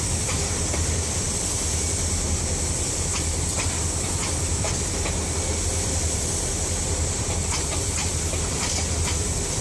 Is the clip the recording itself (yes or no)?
no